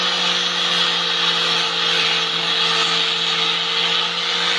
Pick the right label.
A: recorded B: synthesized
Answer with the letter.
A